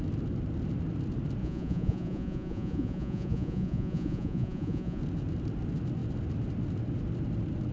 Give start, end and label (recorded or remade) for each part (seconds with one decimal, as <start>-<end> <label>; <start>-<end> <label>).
0.0-1.4 recorded; 1.4-5.0 remade; 5.0-7.7 recorded